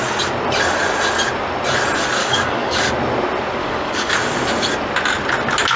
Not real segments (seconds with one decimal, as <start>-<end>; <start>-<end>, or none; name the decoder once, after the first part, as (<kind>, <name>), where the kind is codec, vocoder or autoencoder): 2.2-2.9 (codec, DAC); 3.6-4.1